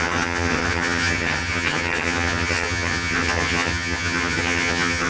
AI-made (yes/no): yes